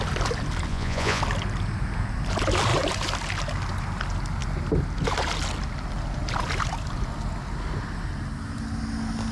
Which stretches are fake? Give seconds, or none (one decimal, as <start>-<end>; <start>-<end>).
0.7-1.2